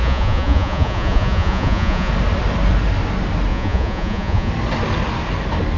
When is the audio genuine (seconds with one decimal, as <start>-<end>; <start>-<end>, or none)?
2.1-3.5; 4.5-5.8